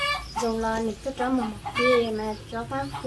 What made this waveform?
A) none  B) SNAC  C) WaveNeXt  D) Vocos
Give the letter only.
A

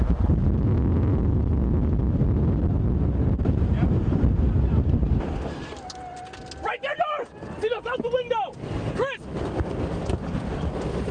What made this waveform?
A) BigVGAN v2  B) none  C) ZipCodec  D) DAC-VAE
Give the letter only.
B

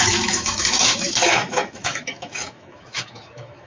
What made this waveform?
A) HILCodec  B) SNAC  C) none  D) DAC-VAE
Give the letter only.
D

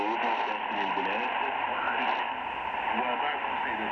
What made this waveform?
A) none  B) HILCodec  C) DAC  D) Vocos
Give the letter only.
A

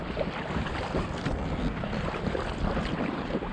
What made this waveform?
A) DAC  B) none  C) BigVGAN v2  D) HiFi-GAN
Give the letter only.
B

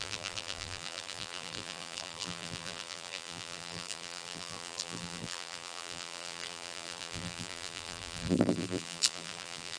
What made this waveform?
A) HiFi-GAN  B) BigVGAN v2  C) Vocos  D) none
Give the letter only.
B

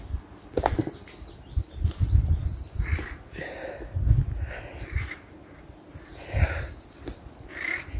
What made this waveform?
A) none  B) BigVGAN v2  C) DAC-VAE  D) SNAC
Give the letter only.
A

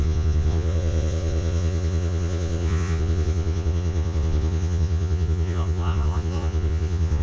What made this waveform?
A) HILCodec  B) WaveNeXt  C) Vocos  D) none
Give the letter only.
C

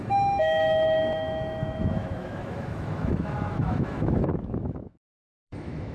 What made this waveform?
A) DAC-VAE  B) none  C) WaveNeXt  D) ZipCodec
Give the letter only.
A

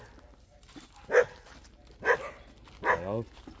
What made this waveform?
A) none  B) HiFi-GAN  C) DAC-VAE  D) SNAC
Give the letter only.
A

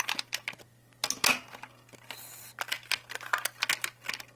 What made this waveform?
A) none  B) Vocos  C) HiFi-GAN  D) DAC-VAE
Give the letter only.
A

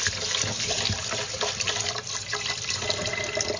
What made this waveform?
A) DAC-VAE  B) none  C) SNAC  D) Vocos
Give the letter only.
B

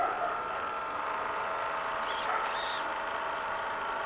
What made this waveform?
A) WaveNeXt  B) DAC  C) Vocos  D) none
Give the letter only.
D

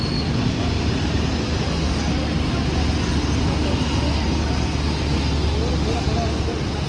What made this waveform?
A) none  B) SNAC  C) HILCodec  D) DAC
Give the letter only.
A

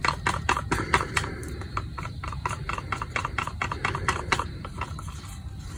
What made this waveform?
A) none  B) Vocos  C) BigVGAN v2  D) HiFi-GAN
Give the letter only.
C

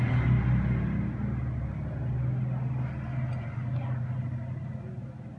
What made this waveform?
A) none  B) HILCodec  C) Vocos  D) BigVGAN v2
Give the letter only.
A